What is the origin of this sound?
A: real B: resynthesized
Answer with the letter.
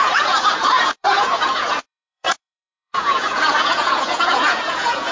B